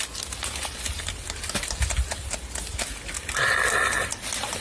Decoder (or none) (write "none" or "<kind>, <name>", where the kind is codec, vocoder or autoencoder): none